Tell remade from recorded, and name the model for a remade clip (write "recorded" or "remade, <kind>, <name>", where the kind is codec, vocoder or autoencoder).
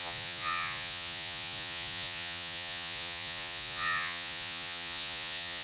remade, vocoder, Vocos